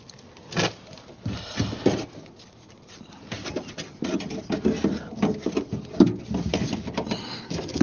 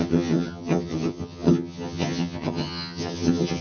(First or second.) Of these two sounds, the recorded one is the first